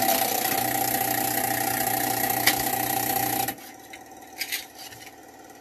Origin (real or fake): real